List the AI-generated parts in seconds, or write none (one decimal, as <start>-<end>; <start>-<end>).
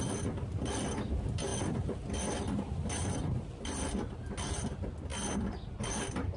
none